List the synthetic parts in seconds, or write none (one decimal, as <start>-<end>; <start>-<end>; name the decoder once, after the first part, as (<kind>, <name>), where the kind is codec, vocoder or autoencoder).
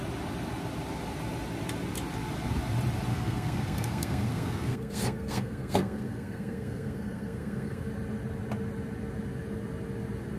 3.1-7.8 (codec, SNAC)